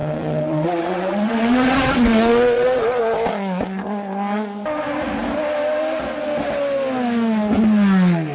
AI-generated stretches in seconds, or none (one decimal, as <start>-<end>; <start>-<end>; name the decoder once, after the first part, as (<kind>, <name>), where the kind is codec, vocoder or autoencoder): 0.0-3.0 (vocoder, WaveNeXt)